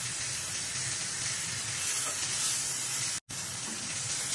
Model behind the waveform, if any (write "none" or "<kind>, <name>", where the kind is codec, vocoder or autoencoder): none